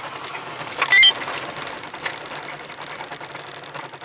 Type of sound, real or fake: real